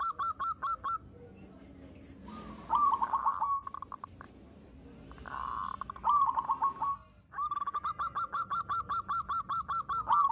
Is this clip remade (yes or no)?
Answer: no